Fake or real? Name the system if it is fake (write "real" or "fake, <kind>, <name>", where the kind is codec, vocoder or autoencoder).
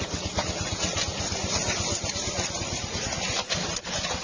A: real